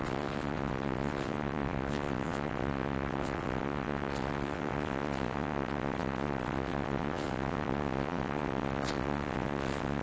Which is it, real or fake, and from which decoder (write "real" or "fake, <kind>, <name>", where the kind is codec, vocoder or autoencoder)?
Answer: fake, vocoder, WaveNeXt